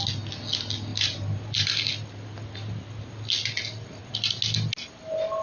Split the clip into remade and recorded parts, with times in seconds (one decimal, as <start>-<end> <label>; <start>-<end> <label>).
0.0-0.9 recorded; 0.9-1.7 remade; 1.7-5.4 recorded